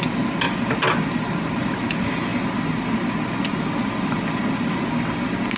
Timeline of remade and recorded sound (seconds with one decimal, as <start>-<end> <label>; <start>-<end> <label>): 0.0-5.6 recorded